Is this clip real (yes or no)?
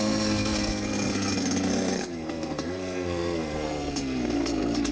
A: no